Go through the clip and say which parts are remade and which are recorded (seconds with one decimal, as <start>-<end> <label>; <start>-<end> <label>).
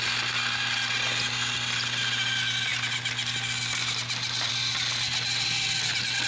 0.0-6.3 recorded